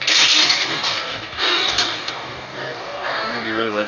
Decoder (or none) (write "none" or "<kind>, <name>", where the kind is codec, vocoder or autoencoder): codec, DAC